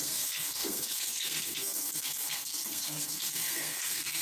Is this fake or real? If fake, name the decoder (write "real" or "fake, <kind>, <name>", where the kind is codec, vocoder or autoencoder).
fake, codec, SNAC